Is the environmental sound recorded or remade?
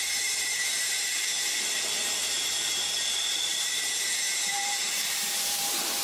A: remade